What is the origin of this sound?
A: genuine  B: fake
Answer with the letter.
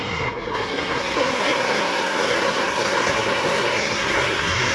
B